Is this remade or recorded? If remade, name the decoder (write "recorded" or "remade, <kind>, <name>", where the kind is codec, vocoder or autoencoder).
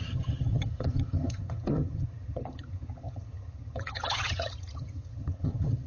remade, vocoder, HiFi-GAN